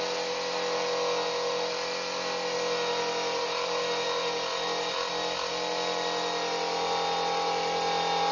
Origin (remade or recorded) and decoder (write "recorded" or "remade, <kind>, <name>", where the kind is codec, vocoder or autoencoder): recorded